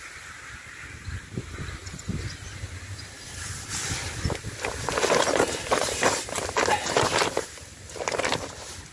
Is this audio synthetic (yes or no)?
no